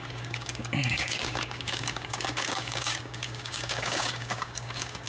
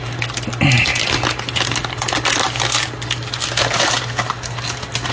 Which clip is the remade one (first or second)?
first